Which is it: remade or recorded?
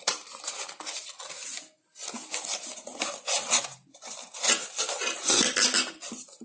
recorded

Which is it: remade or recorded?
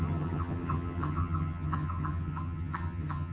remade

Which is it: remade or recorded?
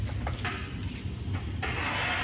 recorded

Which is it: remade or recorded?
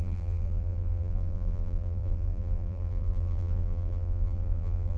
remade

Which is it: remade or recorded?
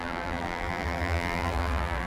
remade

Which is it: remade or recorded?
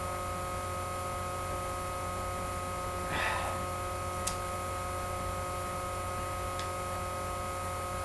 recorded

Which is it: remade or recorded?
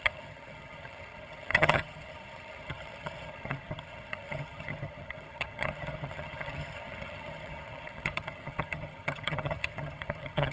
remade